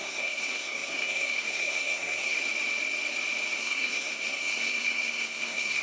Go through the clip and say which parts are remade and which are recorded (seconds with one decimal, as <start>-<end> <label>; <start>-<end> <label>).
0.0-2.4 remade; 2.4-3.6 recorded; 3.6-5.8 remade